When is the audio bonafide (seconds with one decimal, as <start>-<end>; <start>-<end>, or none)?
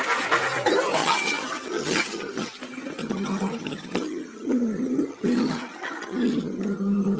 0.0-1.0; 2.6-3.0